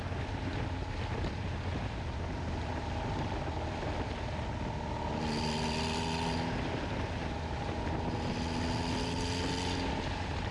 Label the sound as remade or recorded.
recorded